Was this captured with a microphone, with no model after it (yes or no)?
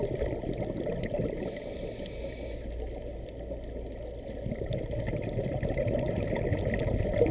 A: yes